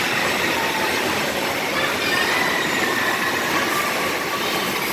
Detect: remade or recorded remade